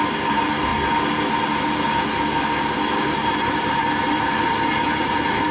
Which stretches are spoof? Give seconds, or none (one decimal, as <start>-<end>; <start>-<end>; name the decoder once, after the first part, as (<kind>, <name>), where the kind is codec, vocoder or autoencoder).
0.0-0.7 (vocoder, BigVGAN v2); 3.0-5.5